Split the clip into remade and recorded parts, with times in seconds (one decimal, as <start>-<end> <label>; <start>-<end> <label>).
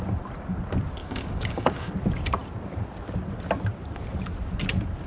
0.0-1.0 recorded; 1.0-1.9 remade; 1.9-5.1 recorded